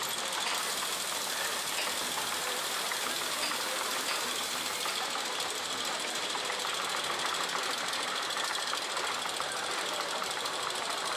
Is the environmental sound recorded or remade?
remade